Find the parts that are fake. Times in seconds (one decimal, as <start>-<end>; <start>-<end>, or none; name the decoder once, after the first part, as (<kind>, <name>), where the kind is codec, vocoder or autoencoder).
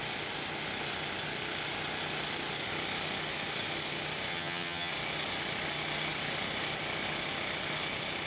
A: 4.3-4.9 (vocoder, HiFi-GAN)